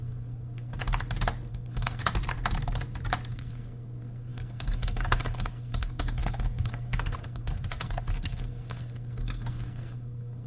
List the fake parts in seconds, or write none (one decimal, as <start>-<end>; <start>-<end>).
0.0-0.8; 1.5-2.0; 3.3-10.5